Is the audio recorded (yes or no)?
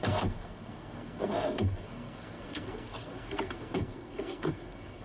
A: no